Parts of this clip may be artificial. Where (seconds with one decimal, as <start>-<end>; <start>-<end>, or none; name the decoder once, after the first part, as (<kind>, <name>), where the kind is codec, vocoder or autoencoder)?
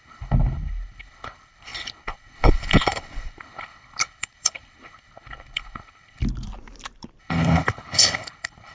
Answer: 0.0-6.2 (codec, HILCodec); 7.2-8.7